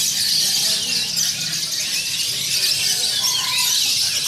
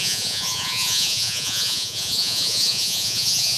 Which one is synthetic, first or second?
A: second